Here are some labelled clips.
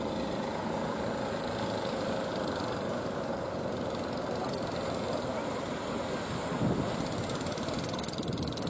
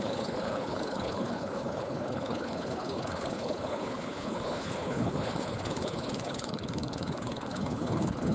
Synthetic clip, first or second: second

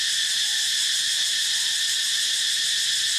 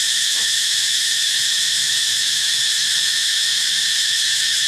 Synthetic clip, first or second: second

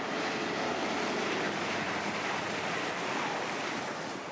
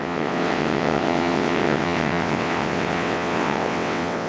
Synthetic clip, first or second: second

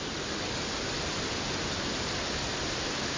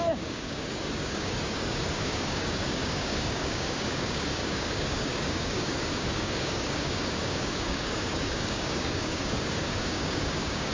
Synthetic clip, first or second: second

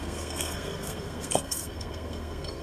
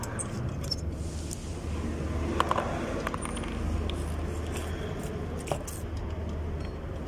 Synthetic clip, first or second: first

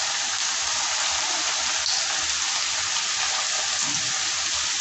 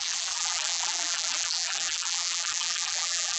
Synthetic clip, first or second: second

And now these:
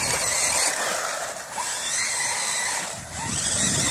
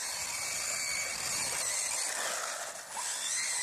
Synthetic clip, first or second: first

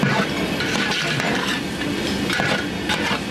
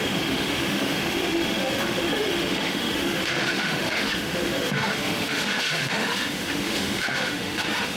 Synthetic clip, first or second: second